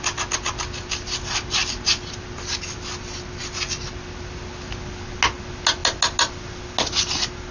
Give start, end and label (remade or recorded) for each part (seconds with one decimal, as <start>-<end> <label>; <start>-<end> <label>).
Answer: 0.0-7.5 recorded